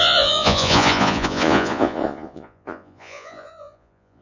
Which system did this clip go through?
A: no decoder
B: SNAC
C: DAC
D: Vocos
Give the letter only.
D